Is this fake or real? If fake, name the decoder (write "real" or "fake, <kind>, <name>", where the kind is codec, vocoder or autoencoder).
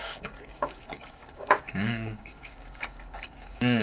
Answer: fake, codec, DAC